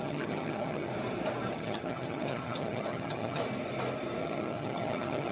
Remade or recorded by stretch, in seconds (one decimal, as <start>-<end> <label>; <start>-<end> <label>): 0.0-0.9 remade; 0.9-1.5 recorded; 1.5-3.4 remade; 3.4-4.2 recorded; 4.2-5.3 remade